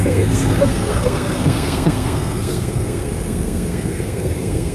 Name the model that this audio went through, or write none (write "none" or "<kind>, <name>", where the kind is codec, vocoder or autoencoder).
codec, SNAC